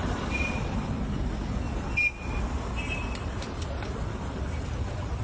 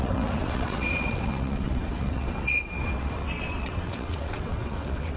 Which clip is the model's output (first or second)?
second